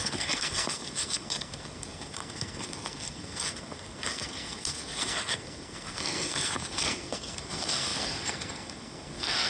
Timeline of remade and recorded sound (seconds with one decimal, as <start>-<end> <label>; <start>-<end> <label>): 0.0-9.5 remade